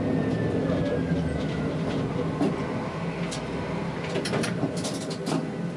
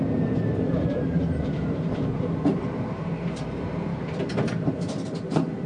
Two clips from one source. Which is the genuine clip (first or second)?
first